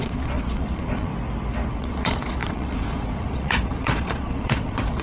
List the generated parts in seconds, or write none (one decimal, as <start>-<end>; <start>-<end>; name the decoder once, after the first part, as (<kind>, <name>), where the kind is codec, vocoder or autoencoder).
0.0-1.1 (vocoder, Vocos); 1.7-5.0